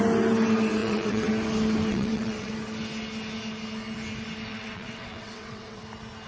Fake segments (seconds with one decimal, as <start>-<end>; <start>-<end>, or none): 0.8-1.3; 1.9-2.5; 4.5-5.8